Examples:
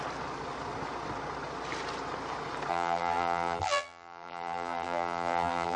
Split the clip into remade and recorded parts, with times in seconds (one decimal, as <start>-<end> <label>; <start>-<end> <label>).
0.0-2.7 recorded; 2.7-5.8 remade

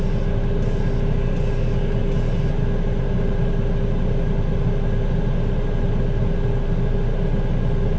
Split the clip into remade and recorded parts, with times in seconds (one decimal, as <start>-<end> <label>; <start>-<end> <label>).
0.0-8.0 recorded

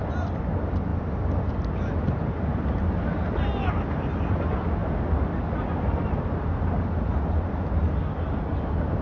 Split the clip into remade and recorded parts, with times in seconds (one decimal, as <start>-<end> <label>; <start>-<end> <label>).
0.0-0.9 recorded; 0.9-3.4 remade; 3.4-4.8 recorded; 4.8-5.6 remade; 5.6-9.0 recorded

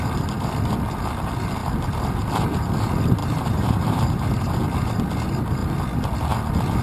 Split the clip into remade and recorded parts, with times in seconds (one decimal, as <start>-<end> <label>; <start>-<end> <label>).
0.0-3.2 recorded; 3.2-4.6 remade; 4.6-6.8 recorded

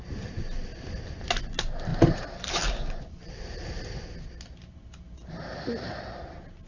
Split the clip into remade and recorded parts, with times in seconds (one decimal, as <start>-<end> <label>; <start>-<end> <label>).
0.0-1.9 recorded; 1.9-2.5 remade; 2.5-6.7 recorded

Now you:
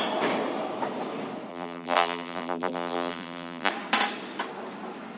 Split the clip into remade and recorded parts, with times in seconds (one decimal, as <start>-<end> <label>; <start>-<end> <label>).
0.0-1.5 recorded; 1.5-3.7 remade; 3.7-5.2 recorded

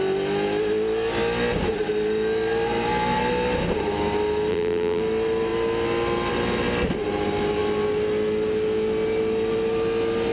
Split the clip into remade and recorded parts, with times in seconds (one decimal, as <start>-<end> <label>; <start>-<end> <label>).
0.0-4.5 recorded; 4.5-5.0 remade; 5.0-10.3 recorded

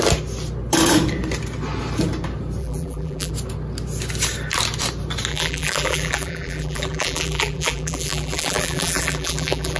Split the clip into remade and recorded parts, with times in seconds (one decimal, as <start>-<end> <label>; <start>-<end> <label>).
0.0-2.6 recorded; 2.6-3.3 remade; 3.3-5.3 recorded; 5.3-9.8 remade